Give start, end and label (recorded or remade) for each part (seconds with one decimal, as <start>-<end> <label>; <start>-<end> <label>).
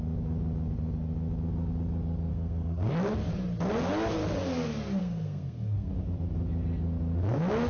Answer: 0.0-2.3 recorded; 2.3-2.9 remade; 2.9-5.0 recorded; 5.0-5.9 remade; 5.9-7.7 recorded